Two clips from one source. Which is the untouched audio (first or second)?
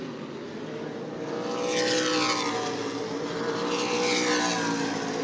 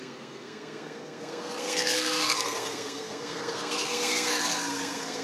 first